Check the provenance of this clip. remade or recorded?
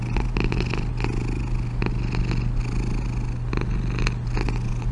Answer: recorded